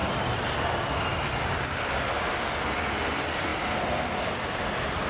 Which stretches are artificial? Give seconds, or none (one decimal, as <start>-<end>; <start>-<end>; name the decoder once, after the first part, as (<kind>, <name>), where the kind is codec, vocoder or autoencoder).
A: none